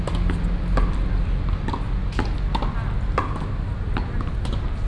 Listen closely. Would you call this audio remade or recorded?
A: recorded